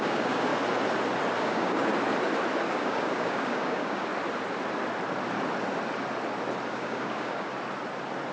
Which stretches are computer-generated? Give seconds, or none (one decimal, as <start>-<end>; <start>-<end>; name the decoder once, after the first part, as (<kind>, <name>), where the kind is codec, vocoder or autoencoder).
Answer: 0.0-0.5 (codec, DAC); 1.4-1.9; 2.7-4.1; 6.7-7.5